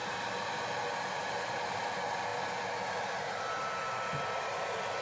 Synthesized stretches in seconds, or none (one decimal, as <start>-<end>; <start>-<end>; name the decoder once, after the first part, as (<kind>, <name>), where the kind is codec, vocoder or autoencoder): none